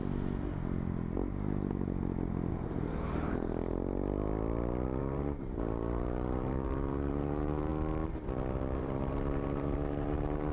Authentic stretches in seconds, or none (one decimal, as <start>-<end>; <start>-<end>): 0.0-2.5; 3.7-5.0; 7.7-8.8